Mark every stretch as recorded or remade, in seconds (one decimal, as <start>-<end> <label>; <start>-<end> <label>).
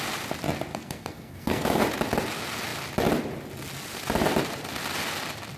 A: 0.0-0.7 recorded; 0.7-1.8 remade; 1.8-5.6 recorded